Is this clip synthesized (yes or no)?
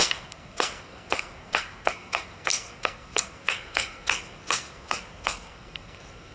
yes